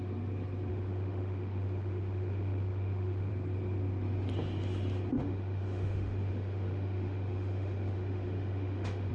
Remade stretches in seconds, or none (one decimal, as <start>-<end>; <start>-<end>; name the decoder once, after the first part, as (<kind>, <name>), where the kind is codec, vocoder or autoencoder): 0.7-3.3 (autoencoder, DAC-VAE); 5.1-9.1